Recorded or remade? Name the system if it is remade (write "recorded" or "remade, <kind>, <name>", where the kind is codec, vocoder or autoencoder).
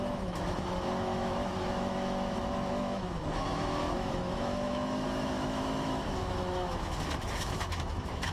remade, autoencoder, DAC-VAE